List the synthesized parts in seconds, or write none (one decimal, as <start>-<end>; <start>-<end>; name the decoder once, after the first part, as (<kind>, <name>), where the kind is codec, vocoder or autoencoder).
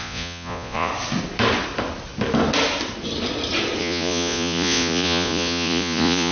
0.0-0.9 (vocoder, Vocos); 3.8-6.3